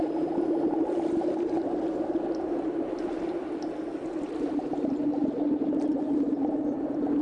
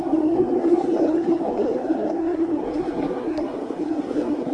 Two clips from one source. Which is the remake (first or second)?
second